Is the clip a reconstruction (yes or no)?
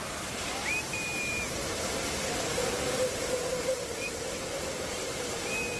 no